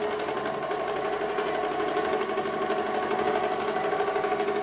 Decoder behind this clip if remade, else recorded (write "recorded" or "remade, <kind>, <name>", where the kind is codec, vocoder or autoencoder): recorded